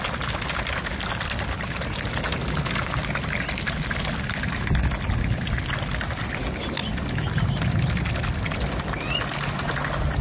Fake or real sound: real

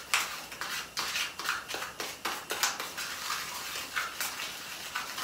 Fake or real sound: real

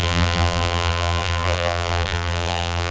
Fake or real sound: fake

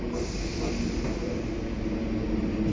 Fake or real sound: real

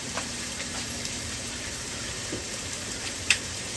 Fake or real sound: fake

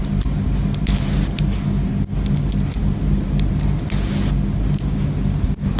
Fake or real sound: real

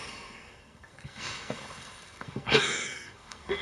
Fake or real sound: fake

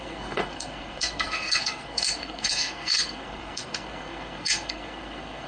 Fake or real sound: fake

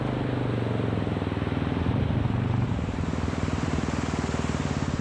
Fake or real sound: real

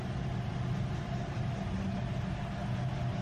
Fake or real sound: real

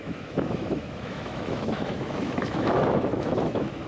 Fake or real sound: fake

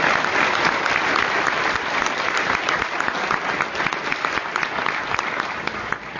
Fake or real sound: real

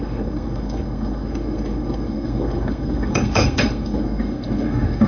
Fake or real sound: fake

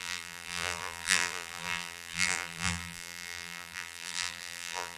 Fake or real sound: fake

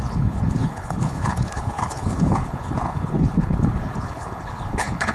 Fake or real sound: fake